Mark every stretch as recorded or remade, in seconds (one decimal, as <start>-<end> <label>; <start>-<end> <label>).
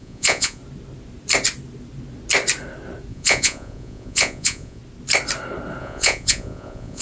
0.0-0.6 remade; 0.6-3.1 recorded; 3.1-4.8 remade; 4.8-5.8 recorded; 5.8-7.0 remade